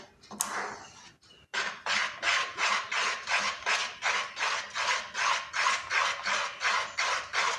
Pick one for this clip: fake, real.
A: real